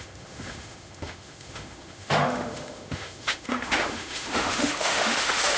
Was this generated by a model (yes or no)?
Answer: yes